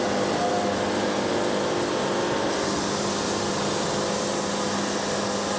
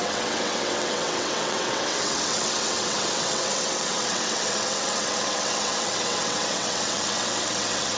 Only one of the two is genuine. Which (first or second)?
first